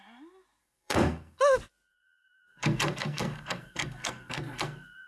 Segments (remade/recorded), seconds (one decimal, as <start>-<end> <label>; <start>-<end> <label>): 0.0-0.6 recorded; 0.6-1.4 remade; 1.4-1.9 recorded; 1.9-5.1 remade